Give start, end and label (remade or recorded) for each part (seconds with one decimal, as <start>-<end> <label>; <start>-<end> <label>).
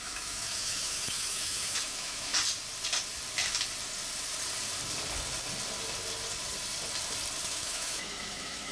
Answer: 0.0-2.3 remade; 2.3-7.5 recorded; 7.5-8.7 remade